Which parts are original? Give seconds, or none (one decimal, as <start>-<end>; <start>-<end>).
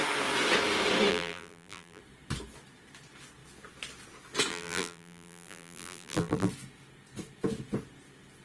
0.0-1.1; 2.0-4.5; 6.5-8.4